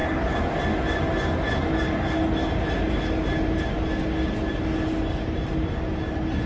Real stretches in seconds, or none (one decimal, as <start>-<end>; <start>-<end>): 0.0-6.5